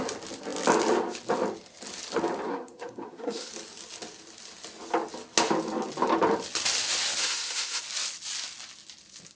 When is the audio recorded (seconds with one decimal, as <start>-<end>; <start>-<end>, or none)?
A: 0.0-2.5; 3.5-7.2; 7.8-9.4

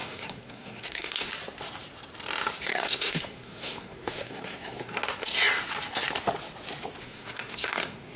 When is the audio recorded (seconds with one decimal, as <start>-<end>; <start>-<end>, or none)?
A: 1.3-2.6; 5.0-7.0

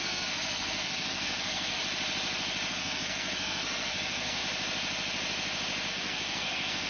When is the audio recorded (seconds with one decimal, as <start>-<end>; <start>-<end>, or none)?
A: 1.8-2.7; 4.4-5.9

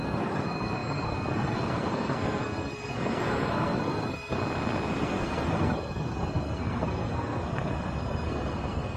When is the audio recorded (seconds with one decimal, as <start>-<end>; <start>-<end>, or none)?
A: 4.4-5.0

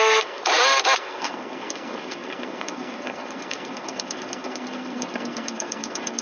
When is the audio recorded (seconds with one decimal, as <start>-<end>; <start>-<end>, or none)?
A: 0.4-1.0